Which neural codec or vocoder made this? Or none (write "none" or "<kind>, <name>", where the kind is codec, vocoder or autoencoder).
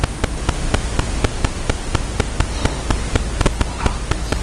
none